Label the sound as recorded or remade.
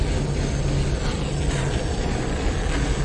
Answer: recorded